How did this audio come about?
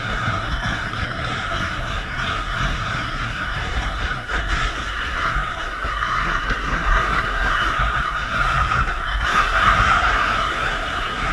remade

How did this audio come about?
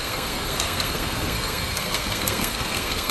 remade